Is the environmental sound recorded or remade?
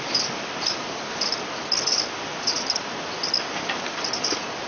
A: recorded